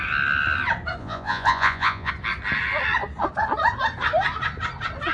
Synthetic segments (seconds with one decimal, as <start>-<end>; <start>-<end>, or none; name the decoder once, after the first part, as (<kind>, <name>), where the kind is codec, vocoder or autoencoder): 1.0-2.1 (vocoder, Vocos)